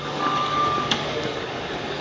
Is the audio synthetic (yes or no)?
yes